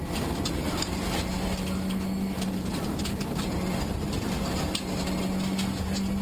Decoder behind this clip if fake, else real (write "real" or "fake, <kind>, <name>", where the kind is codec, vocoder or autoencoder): real